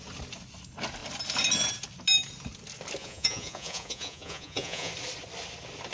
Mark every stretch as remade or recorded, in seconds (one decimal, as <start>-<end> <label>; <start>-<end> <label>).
0.0-3.0 recorded; 3.0-4.9 remade; 4.9-5.9 recorded